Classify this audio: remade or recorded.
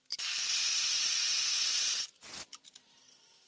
recorded